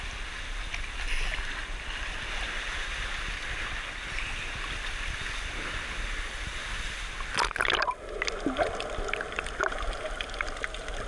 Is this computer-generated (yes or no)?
no